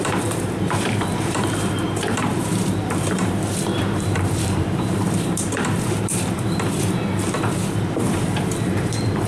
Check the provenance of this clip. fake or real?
fake